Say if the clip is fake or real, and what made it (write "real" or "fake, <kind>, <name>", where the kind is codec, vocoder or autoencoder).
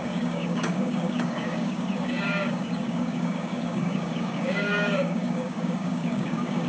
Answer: fake, codec, DAC